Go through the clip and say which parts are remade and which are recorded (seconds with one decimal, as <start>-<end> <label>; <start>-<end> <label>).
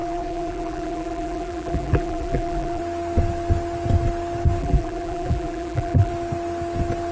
0.0-2.8 remade; 2.8-4.6 recorded; 4.6-6.1 remade; 6.1-7.1 recorded